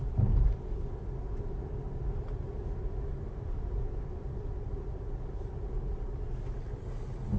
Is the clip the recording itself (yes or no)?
yes